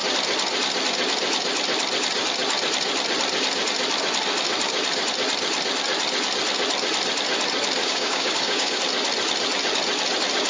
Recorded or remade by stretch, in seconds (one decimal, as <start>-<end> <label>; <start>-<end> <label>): 0.0-7.8 recorded; 7.8-8.8 remade; 8.8-10.5 recorded

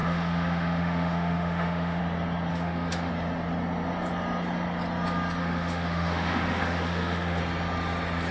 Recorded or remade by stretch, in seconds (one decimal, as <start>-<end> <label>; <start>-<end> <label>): 0.0-2.0 remade; 2.0-2.5 recorded; 2.5-3.1 remade; 3.1-5.4 recorded; 5.4-7.4 remade; 7.4-8.3 recorded

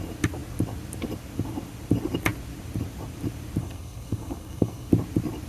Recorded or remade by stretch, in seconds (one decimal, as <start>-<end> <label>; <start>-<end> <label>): 0.0-3.6 recorded; 3.6-4.9 remade; 4.9-5.5 recorded

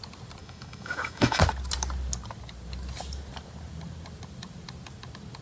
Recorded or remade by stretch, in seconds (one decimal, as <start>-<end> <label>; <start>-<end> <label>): 0.0-0.4 recorded; 0.4-1.4 remade; 1.4-5.4 recorded